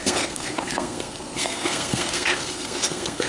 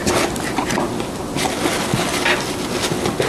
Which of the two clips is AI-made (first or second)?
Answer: first